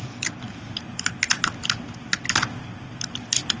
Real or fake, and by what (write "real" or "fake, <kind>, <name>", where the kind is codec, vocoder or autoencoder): real